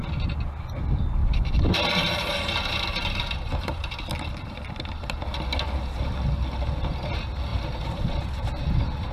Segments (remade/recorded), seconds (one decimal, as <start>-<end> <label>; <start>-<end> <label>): 0.0-1.2 recorded; 1.2-4.0 remade; 4.0-7.5 recorded; 7.5-8.5 remade; 8.5-9.1 recorded